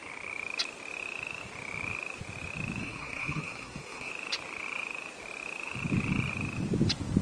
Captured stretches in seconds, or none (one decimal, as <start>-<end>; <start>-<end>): 0.0-2.8; 4.1-7.2